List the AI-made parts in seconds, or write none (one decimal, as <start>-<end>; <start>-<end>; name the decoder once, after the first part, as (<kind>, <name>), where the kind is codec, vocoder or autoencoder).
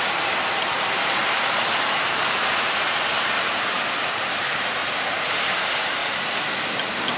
0.0-6.0 (vocoder, BigVGAN v2)